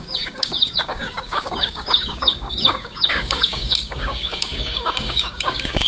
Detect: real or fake fake